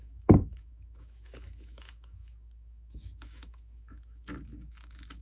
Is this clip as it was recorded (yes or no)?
no